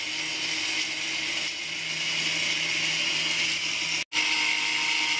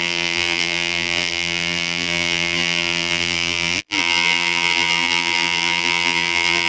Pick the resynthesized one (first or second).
second